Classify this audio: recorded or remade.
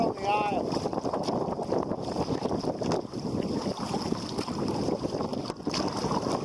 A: recorded